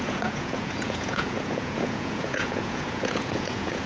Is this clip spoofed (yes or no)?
yes